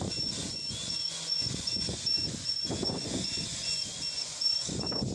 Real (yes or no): no